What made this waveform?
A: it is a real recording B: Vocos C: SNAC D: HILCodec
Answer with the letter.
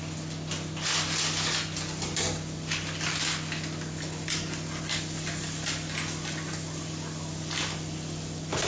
A